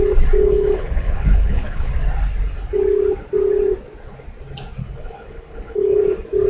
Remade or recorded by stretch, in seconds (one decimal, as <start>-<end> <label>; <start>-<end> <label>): 0.0-0.4 recorded; 0.4-1.9 remade; 1.9-4.8 recorded; 4.8-6.0 remade; 6.0-6.5 recorded